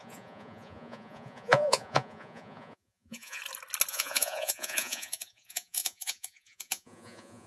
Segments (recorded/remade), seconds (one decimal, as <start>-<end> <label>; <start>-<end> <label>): 0.0-3.4 remade; 3.4-3.9 recorded; 3.9-7.5 remade